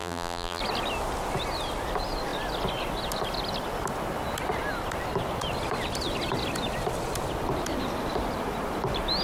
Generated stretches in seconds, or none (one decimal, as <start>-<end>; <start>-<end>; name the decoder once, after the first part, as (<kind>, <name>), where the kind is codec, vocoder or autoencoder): 0.0-0.6 (vocoder, BigVGAN v2)